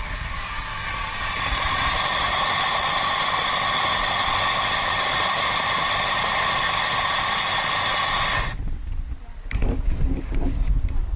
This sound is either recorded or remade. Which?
remade